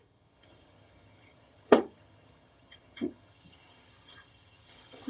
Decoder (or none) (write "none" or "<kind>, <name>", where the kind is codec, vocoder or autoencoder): vocoder, HiFi-GAN